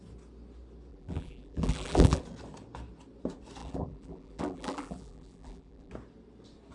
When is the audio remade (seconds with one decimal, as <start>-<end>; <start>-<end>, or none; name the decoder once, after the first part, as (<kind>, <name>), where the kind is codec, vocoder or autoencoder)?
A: 0.9-2.2 (vocoder, BigVGAN v2); 3.6-5.9

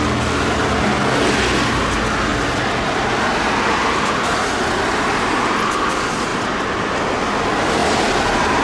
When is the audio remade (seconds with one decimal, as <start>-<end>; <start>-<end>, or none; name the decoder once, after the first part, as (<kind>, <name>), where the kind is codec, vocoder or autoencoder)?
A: 2.3-4.3 (vocoder, BigVGAN v2); 7.8-8.6

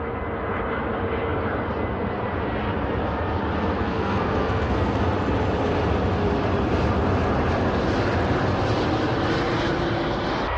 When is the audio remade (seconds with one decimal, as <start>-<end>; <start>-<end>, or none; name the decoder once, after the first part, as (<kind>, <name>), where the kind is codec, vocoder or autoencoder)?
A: 3.7-5.0 (codec, SNAC)

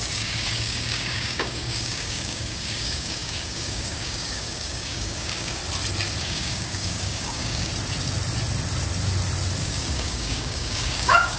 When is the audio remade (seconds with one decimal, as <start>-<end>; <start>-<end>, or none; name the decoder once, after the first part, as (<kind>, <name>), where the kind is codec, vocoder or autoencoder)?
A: 0.0-5.6 (codec, DAC); 6.2-7.7; 9.6-11.4